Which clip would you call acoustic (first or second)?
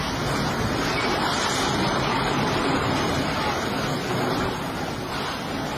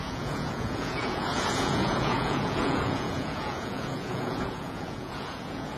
first